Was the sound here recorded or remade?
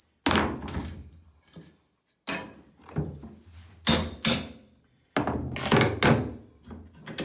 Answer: recorded